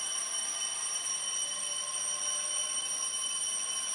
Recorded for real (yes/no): yes